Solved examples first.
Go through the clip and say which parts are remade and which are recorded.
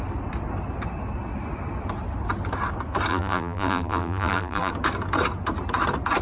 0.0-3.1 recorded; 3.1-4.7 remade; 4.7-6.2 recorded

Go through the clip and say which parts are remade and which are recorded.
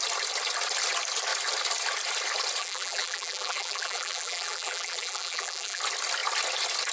0.0-2.6 recorded; 2.6-5.8 remade; 5.8-6.9 recorded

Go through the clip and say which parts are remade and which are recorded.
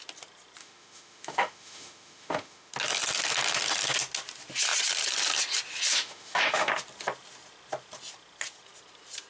0.0-0.6 recorded; 0.6-2.7 remade; 2.7-5.9 recorded; 5.9-6.7 remade; 6.7-9.3 recorded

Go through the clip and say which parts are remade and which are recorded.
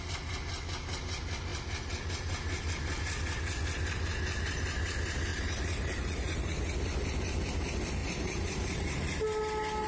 0.0-5.3 recorded; 5.3-6.6 remade; 6.6-8.0 recorded; 8.0-9.4 remade; 9.4-9.9 recorded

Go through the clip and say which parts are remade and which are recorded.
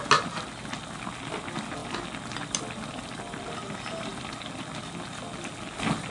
0.0-6.1 recorded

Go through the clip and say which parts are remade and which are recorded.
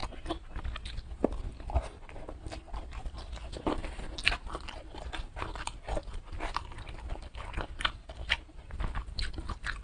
0.0-1.5 recorded; 1.5-9.8 remade